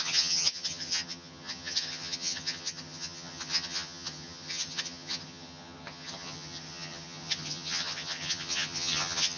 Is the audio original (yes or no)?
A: no